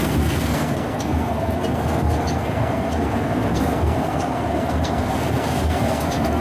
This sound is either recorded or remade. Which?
remade